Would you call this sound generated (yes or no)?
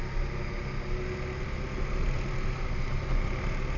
no